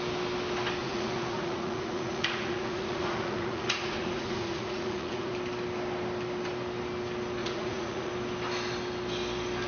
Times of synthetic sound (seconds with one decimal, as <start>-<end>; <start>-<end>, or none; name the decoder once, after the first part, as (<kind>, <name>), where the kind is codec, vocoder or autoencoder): 0.8-5.3 (vocoder, Vocos); 7.4-8.1

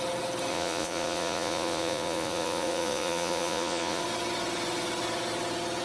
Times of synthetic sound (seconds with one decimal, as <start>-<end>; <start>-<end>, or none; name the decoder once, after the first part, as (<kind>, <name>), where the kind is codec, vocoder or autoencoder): 0.5-4.0 (vocoder, Vocos)